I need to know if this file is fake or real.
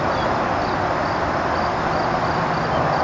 real